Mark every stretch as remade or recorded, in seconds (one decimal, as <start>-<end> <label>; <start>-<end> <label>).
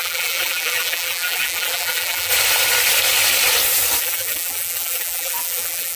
0.0-2.3 remade; 2.3-4.0 recorded; 4.0-6.0 remade